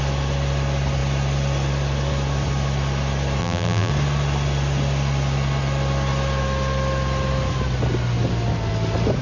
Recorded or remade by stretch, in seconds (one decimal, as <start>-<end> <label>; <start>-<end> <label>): 0.0-3.4 recorded; 3.4-3.9 remade; 3.9-9.2 recorded

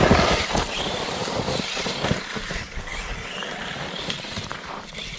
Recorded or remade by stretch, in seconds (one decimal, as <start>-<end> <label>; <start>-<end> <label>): 0.0-5.2 remade

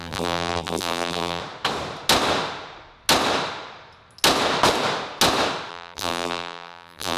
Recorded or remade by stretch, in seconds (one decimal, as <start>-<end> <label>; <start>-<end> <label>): 0.0-1.4 remade; 1.4-5.7 recorded; 5.7-7.2 remade

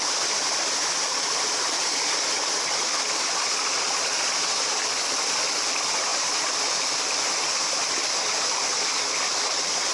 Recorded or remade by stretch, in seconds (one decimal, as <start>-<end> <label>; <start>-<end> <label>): 0.0-9.9 recorded

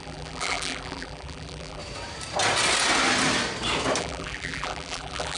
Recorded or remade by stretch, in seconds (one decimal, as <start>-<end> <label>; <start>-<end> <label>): 0.0-1.8 remade; 1.8-4.0 recorded; 4.0-5.4 remade

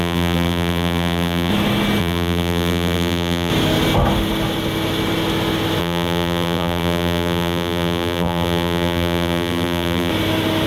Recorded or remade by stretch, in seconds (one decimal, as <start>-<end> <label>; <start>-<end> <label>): 0.0-1.5 remade; 1.5-2.0 recorded; 2.0-3.5 remade; 3.5-5.8 recorded; 5.8-10.1 remade; 10.1-10.7 recorded

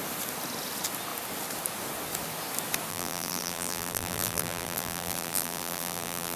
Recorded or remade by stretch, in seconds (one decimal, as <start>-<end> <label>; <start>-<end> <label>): 0.0-2.9 recorded; 2.9-6.4 remade

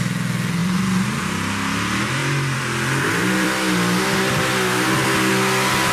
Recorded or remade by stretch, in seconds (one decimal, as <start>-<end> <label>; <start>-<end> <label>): 0.0-0.6 recorded; 0.6-1.2 remade; 1.2-2.2 recorded; 2.2-5.3 remade; 5.3-5.9 recorded